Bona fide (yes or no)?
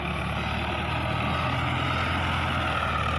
yes